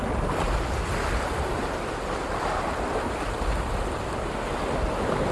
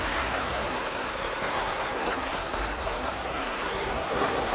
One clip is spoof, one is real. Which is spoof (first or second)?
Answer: second